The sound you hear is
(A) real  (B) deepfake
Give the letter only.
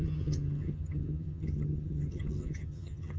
B